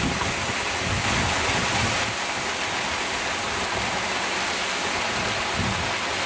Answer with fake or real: real